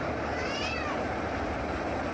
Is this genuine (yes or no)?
no